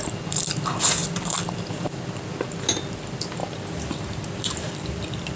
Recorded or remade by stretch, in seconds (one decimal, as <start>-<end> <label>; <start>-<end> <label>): 0.0-5.4 remade